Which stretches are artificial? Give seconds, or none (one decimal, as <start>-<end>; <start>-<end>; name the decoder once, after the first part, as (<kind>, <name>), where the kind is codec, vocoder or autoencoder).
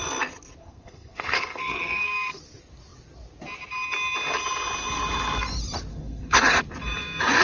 0.6-2.4 (codec, SNAC); 5.9-6.6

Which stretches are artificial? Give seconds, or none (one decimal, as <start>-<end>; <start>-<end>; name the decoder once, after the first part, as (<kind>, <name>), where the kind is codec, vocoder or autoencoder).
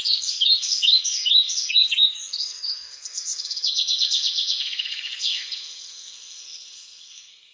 0.0-7.5 (codec, SNAC)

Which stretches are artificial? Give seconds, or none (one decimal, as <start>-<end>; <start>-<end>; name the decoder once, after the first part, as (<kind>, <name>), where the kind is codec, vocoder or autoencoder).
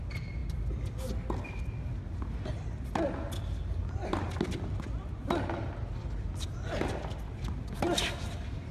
none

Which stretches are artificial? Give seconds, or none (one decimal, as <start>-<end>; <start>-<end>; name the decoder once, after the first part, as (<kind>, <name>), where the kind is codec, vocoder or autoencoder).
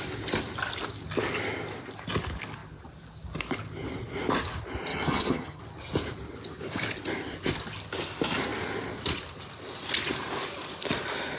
4.9-5.6 (vocoder, HiFi-GAN)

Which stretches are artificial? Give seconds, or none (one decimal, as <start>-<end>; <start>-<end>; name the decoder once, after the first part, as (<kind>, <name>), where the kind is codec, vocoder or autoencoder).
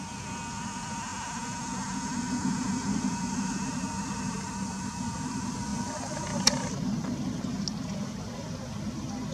5.7-7.4 (vocoder, BigVGAN v2)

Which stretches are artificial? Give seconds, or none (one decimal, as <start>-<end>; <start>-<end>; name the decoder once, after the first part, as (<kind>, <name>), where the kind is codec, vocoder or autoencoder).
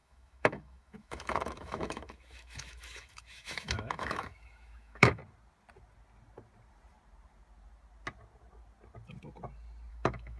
0.0-5.2 (autoencoder, DAC-VAE); 9.9-10.4